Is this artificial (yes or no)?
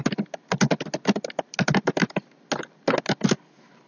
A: no